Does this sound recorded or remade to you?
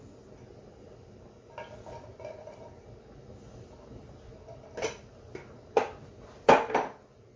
recorded